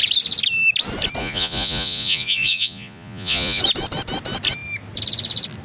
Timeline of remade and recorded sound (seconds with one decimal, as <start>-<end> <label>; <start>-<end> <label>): 0.0-1.2 recorded; 1.2-3.6 remade; 3.6-5.6 recorded

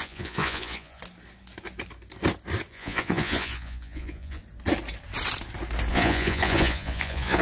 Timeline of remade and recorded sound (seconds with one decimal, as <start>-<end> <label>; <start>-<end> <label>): 0.0-1.0 remade; 1.0-2.7 recorded; 2.7-4.4 remade; 4.4-5.9 recorded; 5.9-7.4 remade

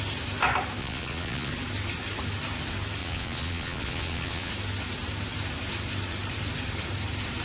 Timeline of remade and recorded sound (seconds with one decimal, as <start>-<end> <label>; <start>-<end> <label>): 0.0-0.8 recorded; 0.8-1.5 remade; 1.5-3.0 recorded; 3.0-4.5 remade; 4.5-7.4 recorded

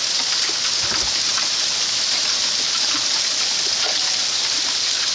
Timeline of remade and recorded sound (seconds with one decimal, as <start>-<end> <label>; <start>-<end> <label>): 0.0-5.1 recorded

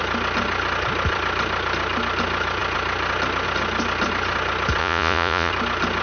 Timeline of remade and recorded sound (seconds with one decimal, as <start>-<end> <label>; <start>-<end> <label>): 0.0-4.8 recorded; 4.8-5.5 remade; 5.5-6.0 recorded

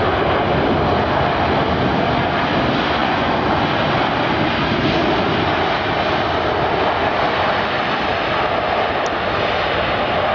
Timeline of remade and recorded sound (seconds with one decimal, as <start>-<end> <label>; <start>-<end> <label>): 0.0-3.0 recorded; 3.0-3.8 remade; 3.8-10.3 recorded

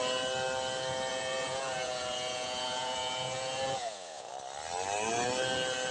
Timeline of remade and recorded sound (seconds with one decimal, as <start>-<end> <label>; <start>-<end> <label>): 0.0-1.1 recorded; 1.1-4.3 remade; 4.3-5.9 recorded

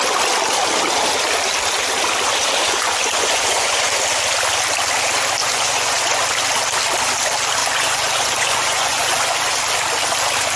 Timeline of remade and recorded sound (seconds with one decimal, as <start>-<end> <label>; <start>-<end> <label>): 0.0-2.6 recorded; 2.6-3.9 remade; 3.9-5.4 recorded; 5.4-6.2 remade; 6.2-7.6 recorded; 7.6-9.5 remade; 9.5-10.6 recorded